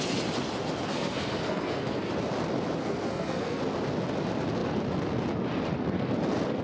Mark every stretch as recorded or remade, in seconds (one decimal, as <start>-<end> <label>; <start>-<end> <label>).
0.0-0.9 recorded; 0.9-2.1 remade; 2.1-2.8 recorded; 2.8-3.6 remade; 3.6-6.6 recorded